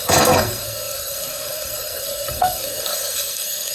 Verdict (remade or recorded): remade